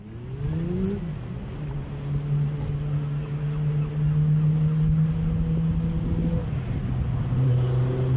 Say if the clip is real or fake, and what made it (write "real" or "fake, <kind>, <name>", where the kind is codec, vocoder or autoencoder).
real